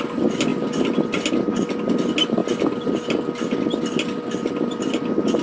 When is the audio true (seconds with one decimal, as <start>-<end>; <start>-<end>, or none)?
0.0-5.4